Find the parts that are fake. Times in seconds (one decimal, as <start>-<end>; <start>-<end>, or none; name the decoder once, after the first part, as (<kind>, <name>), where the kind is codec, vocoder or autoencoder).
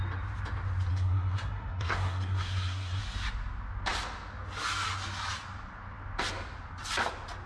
0.9-3.0 (codec, SNAC)